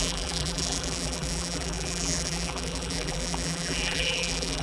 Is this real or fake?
fake